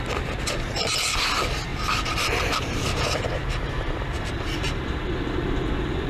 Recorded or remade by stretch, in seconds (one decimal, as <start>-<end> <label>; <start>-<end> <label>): 0.0-1.7 recorded; 1.7-5.1 remade; 5.1-6.1 recorded